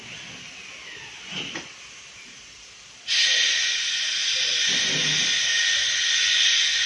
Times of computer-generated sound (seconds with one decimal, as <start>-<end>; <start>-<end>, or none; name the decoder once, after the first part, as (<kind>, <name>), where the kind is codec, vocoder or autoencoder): 3.5-4.0 (vocoder, Vocos)